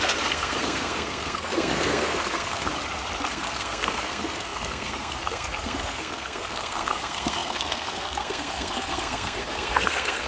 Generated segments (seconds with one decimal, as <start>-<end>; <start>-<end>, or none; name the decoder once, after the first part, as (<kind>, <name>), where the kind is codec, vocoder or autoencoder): 0.0-2.7 (codec, SNAC); 3.3-10.3